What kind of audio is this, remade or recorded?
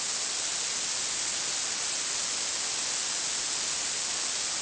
recorded